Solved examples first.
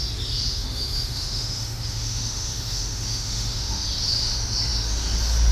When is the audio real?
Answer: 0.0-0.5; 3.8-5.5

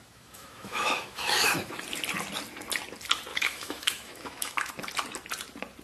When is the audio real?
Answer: 1.8-3.3; 4.7-5.8

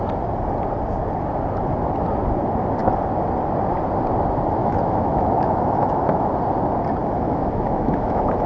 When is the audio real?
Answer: 0.0-4.6; 6.3-7.0

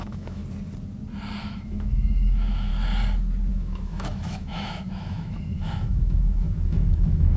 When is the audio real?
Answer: 0.4-1.4; 2.7-3.5

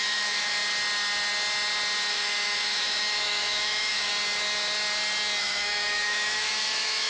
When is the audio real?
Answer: 0.6-2.1; 4.1-5.4

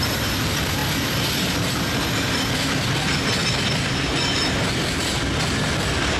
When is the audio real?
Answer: 0.0-6.2

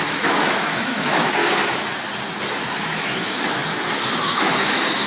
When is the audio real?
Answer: 1.4-2.7; 3.6-4.2

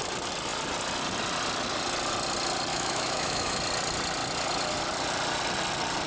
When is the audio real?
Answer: 0.0-2.7; 3.6-6.1